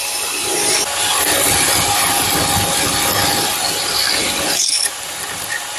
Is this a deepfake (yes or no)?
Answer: no